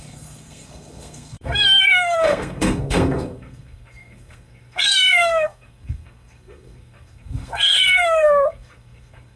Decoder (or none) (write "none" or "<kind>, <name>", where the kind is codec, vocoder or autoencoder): codec, SNAC